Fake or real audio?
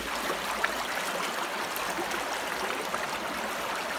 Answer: real